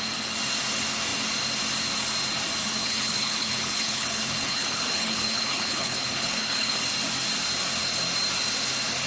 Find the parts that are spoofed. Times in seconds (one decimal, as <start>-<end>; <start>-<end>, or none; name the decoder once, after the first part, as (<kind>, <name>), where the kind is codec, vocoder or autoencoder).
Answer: 2.6-6.8 (codec, HILCodec)